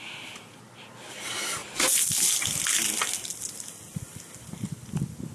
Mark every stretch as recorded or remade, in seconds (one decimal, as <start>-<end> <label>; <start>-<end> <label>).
0.0-1.6 recorded; 1.6-2.6 remade; 2.6-5.3 recorded